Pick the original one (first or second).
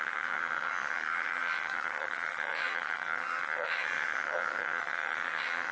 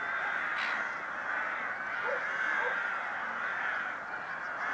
second